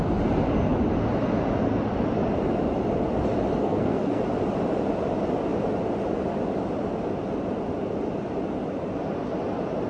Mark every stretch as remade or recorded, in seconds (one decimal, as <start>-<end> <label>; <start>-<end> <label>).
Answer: 0.0-3.6 recorded; 3.6-4.2 remade; 4.2-9.9 recorded